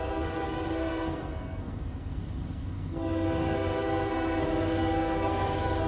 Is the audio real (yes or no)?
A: no